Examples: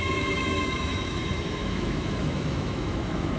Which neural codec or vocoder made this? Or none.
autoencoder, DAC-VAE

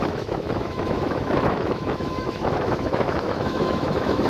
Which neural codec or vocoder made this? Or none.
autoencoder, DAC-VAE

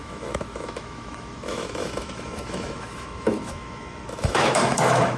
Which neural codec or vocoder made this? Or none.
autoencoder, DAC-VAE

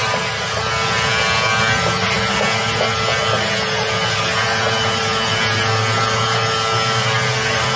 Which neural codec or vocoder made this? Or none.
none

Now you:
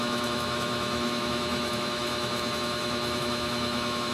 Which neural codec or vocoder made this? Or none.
autoencoder, DAC-VAE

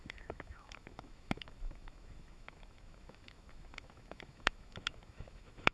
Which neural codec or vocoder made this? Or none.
autoencoder, DAC-VAE